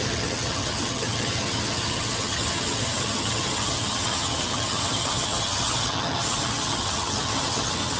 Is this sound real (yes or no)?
no